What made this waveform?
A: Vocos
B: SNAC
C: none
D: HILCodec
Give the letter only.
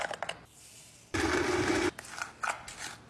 C